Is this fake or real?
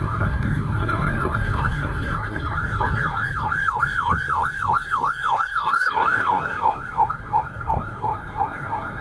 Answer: fake